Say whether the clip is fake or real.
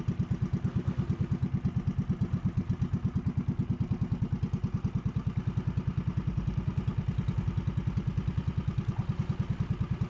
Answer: real